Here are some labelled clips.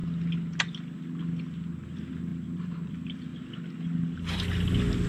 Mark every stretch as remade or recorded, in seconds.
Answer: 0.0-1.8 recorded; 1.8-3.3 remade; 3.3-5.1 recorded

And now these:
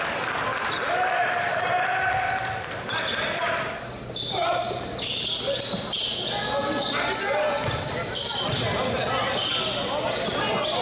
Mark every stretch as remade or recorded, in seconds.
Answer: 0.0-4.4 recorded; 4.4-5.2 remade; 5.2-10.8 recorded

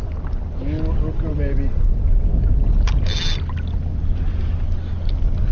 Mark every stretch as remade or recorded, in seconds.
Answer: 0.0-5.5 recorded

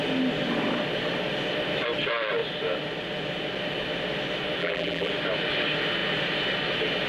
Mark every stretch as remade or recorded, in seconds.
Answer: 0.0-4.6 recorded; 4.6-5.1 remade; 5.1-7.1 recorded

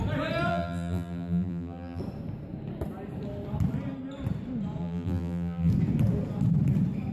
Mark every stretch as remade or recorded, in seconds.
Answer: 0.0-0.5 recorded; 0.5-2.0 remade; 2.0-4.8 recorded; 4.8-5.7 remade; 5.7-7.1 recorded